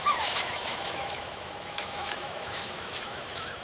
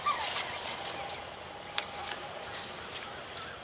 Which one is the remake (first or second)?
first